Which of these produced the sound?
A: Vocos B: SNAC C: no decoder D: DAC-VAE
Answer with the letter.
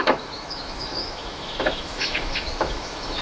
D